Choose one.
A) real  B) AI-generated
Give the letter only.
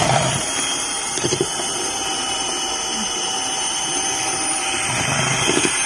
B